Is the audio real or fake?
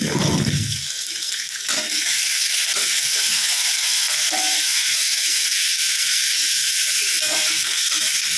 fake